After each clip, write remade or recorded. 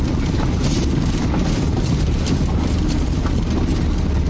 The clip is recorded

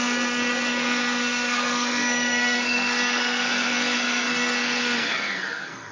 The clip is remade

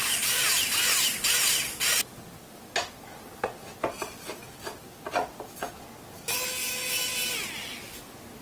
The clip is recorded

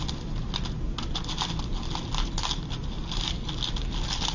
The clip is recorded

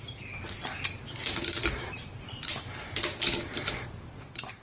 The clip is remade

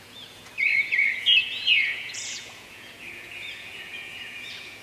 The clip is remade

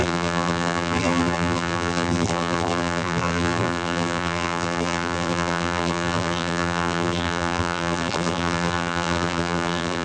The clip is remade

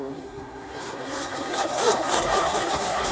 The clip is remade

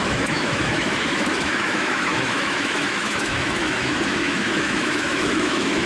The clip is remade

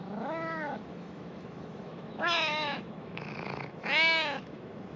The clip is remade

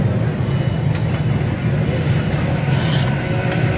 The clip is recorded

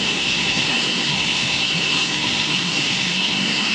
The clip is remade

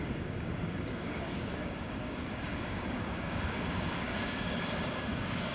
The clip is remade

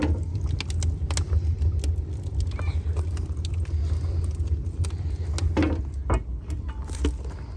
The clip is recorded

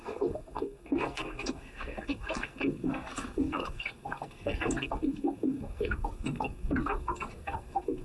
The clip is remade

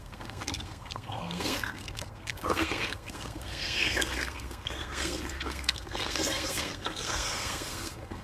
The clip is remade